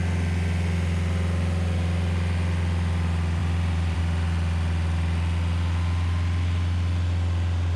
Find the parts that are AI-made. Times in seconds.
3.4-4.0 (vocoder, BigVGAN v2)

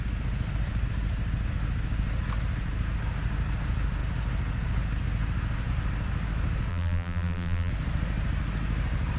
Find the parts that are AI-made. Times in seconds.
6.7-7.7 (vocoder, BigVGAN v2)